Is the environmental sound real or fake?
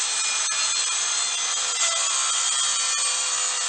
real